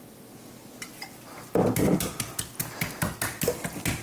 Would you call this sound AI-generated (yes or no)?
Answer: no